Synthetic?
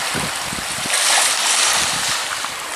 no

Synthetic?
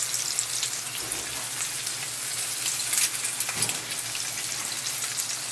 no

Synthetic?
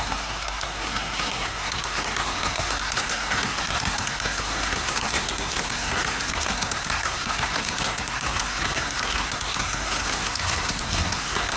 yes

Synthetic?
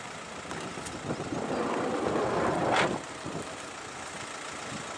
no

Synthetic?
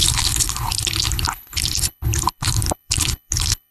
yes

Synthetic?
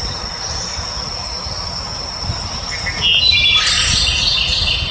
no